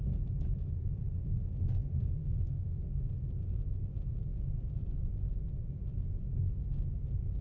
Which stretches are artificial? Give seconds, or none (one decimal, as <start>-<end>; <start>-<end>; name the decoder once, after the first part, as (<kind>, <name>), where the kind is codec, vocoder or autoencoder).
2.2-2.8 (autoencoder, DAC-VAE)